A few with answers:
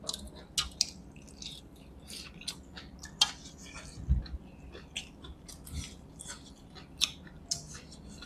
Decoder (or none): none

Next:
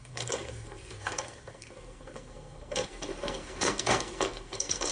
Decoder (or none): codec, SNAC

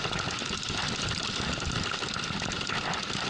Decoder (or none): none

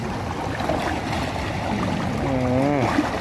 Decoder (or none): none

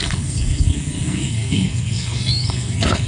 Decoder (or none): codec, SNAC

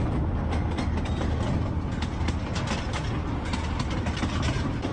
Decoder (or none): none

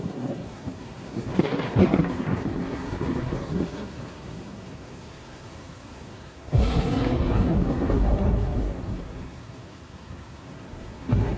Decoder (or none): codec, SNAC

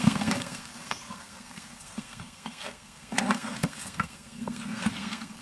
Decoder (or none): codec, SNAC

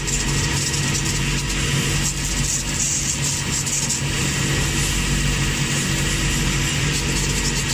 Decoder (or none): none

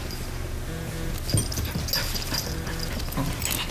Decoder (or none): none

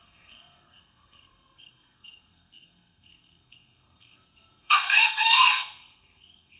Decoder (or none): codec, SNAC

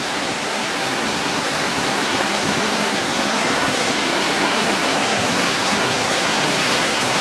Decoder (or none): codec, SNAC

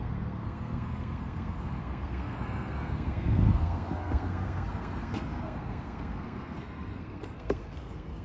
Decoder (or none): codec, SNAC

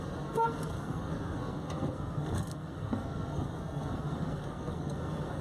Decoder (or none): codec, SNAC